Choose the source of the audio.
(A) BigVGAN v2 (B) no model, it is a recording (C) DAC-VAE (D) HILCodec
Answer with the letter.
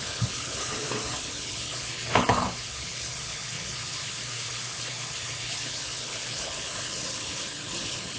D